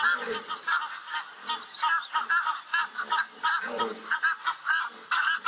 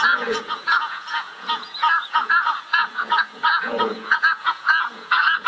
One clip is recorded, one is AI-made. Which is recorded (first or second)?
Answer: first